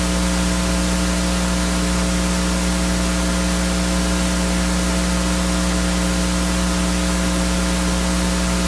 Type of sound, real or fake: real